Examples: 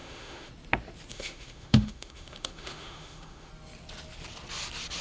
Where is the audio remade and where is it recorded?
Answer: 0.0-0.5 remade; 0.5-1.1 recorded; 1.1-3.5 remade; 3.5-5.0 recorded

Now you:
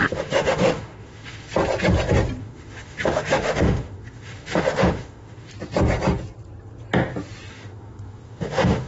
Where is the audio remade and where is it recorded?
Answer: 0.0-1.5 remade; 1.5-2.4 recorded; 2.4-5.5 remade; 5.5-7.5 recorded; 7.5-8.9 remade

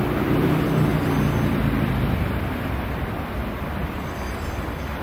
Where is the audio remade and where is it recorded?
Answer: 0.0-5.0 recorded

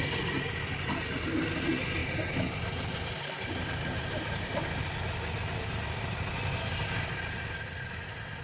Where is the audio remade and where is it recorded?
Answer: 0.0-8.4 recorded

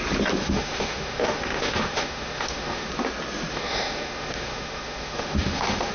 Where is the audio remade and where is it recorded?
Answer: 0.0-0.4 recorded; 0.4-2.9 remade; 2.9-3.5 recorded; 3.5-5.9 remade

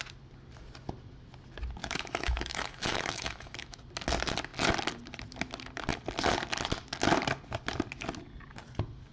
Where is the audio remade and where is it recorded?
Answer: 0.0-1.8 recorded; 1.8-3.8 remade; 3.8-9.1 recorded